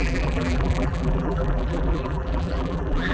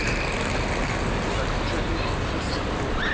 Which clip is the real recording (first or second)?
second